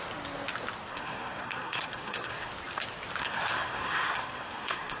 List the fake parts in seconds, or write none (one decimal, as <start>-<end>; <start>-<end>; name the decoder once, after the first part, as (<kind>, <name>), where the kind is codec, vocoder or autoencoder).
0.9-2.5 (codec, SNAC); 3.2-5.0